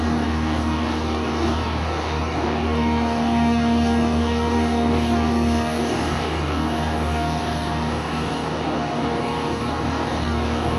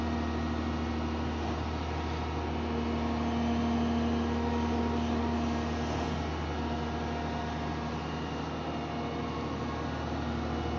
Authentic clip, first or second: second